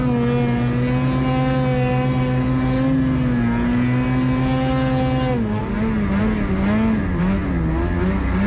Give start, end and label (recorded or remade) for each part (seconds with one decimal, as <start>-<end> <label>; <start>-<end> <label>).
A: 0.0-8.5 recorded